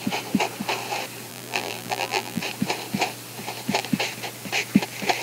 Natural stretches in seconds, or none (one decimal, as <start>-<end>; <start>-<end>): 0.0-1.3; 2.4-5.2